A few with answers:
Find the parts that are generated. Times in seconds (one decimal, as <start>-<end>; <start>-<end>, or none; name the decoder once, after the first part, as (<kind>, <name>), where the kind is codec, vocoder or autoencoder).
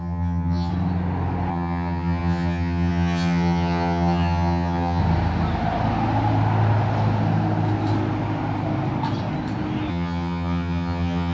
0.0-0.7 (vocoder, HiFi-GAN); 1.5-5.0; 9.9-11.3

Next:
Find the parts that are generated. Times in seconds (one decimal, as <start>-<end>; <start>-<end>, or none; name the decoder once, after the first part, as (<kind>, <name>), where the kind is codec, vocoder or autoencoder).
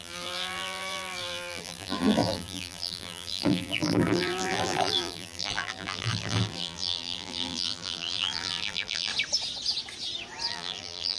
0.0-9.1 (vocoder, BigVGAN v2); 10.5-11.2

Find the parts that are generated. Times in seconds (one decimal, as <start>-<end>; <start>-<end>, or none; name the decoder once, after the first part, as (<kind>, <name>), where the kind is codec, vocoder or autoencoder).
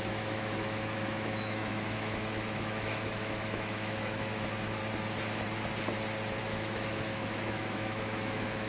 0.0-4.8 (autoencoder, DAC-VAE); 6.4-8.7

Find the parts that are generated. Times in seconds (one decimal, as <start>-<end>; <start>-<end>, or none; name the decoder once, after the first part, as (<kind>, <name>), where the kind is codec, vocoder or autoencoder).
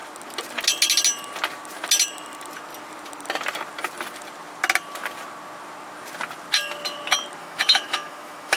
7.4-8.6 (autoencoder, DAC-VAE)